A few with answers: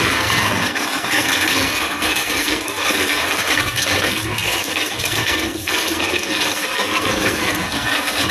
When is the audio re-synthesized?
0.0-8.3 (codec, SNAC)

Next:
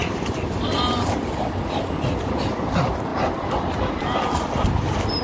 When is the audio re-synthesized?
0.0-5.2 (vocoder, BigVGAN v2)

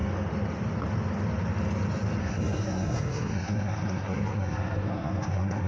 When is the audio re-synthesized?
2.2-5.7 (codec, SNAC)